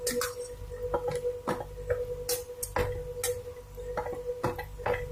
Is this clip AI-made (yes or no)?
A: no